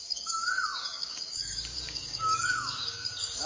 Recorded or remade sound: remade